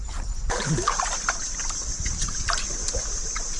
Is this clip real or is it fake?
real